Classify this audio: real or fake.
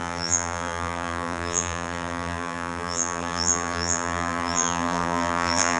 fake